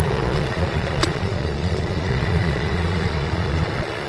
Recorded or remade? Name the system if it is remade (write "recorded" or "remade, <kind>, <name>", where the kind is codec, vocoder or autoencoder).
remade, vocoder, Vocos